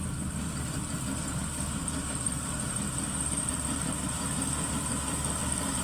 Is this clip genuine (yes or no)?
no